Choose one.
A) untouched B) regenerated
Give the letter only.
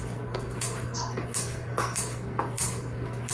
B